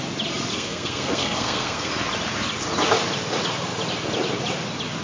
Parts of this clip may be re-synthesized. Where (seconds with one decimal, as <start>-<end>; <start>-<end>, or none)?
0.5-1.9